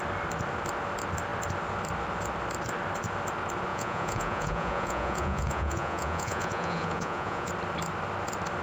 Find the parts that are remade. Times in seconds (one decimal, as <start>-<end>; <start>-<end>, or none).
3.7-7.5